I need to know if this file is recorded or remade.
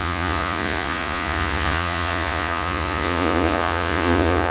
remade